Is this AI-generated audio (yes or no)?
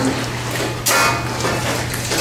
no